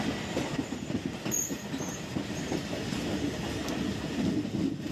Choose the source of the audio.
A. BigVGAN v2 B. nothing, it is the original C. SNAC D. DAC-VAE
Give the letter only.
B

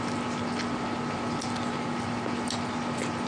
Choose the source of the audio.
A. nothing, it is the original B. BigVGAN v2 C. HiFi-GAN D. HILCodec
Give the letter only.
A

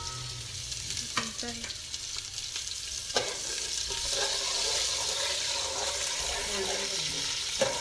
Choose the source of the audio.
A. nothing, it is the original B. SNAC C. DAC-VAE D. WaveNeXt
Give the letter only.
A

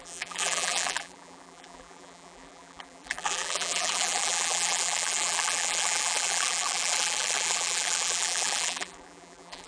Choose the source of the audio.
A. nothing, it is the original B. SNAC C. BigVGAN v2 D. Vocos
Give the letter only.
C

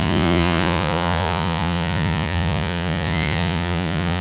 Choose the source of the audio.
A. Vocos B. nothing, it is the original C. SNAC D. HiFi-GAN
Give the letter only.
A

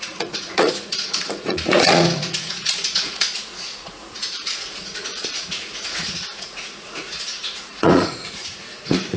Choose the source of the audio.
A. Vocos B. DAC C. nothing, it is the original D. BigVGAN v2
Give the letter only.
A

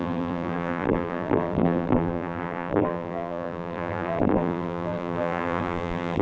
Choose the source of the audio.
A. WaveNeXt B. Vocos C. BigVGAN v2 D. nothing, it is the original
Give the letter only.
C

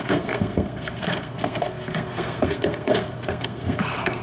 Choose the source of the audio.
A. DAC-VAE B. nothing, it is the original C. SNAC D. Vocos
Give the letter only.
C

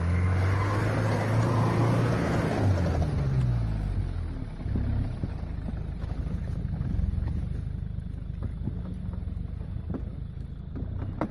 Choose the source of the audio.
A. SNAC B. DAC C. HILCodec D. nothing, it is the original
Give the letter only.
D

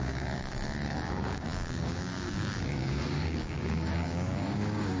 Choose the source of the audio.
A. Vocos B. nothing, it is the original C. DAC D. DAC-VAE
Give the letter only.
C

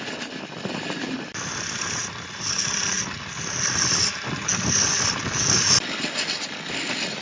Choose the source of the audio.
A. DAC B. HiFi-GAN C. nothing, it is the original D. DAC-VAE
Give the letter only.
C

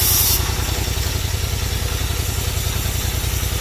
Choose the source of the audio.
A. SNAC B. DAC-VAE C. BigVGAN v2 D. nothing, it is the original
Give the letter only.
D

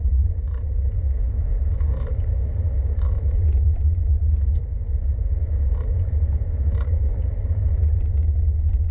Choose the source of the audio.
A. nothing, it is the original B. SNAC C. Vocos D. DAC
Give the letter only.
A